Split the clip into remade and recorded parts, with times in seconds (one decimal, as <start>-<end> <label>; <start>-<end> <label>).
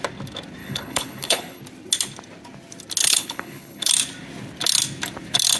0.0-0.6 recorded; 0.6-1.6 remade; 1.6-3.0 recorded; 3.0-3.9 remade; 3.9-5.6 recorded